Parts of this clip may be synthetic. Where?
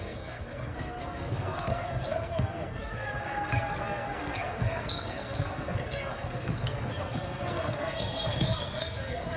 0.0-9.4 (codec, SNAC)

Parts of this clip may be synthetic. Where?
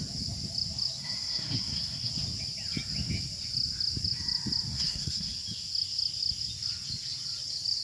1.0-2.1 (codec, SNAC); 4.7-5.3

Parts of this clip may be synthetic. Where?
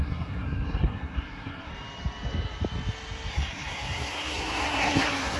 0.0-1.7 (codec, SNAC); 3.3-5.4